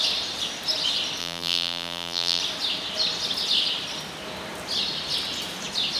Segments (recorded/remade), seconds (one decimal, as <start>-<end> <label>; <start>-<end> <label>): 0.0-1.2 recorded; 1.2-2.4 remade; 2.4-6.0 recorded